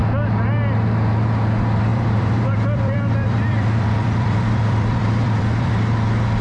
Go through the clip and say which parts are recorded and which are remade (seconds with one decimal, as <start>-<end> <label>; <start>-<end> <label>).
0.0-1.9 recorded; 1.9-5.7 remade; 5.7-6.4 recorded